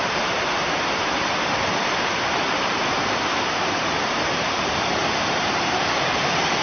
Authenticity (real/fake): fake